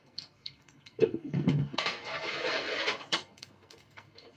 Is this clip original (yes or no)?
no